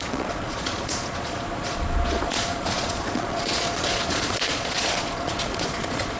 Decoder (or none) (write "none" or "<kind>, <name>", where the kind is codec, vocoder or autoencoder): vocoder, Vocos